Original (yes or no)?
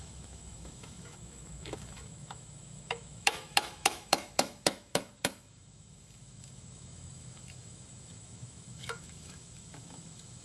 no